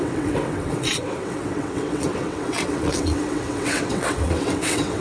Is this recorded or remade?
remade